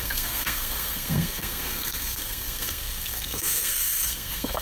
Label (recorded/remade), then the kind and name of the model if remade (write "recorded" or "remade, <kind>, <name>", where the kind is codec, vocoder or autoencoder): remade, codec, SNAC